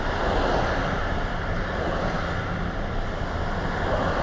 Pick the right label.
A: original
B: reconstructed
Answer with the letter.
A